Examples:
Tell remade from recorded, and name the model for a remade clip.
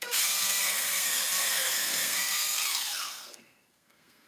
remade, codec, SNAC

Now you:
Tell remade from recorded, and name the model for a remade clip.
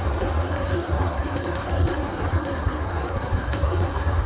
remade, codec, SNAC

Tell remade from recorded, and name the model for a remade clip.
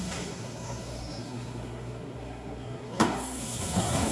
remade, codec, SNAC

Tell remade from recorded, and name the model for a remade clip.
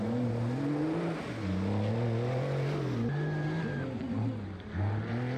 recorded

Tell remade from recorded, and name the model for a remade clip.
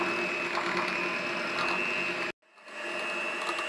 recorded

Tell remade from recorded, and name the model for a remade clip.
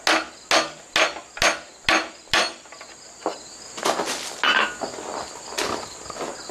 recorded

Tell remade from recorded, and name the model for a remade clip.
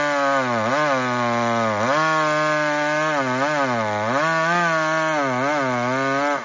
recorded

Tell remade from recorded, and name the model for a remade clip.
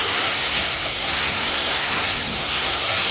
remade, codec, SNAC